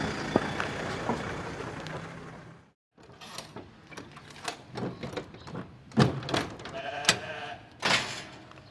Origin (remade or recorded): recorded